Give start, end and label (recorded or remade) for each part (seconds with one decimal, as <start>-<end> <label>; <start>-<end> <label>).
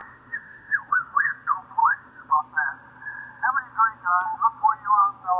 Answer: 0.0-1.3 remade; 1.3-1.8 recorded; 1.8-2.4 remade; 2.4-5.4 recorded